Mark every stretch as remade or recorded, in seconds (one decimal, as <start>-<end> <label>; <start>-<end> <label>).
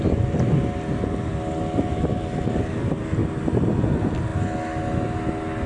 0.0-5.7 recorded